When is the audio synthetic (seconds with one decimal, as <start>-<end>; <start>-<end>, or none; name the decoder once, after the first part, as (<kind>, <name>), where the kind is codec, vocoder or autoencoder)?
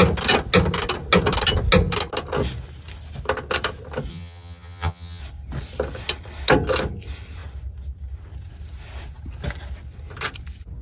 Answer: 4.1-5.2 (vocoder, HiFi-GAN)